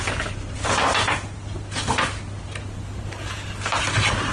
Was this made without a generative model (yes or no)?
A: yes